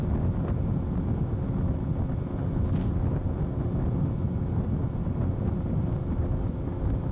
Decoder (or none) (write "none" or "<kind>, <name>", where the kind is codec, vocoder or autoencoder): none